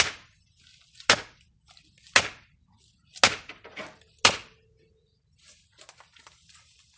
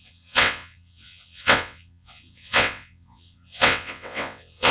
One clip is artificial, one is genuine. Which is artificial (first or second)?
second